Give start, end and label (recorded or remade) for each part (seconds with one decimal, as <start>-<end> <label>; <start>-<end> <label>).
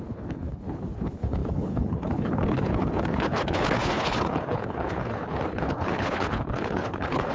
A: 0.0-7.3 remade